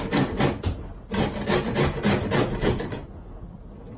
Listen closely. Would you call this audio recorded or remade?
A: recorded